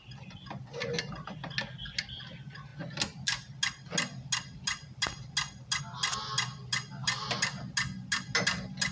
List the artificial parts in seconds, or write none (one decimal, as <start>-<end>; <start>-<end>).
none